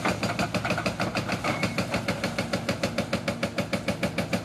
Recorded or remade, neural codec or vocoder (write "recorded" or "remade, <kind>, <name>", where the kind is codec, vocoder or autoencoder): recorded